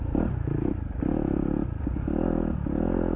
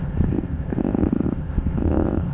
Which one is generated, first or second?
second